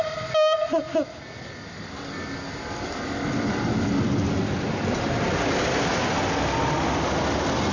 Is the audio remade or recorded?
recorded